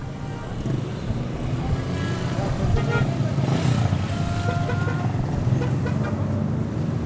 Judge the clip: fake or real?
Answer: real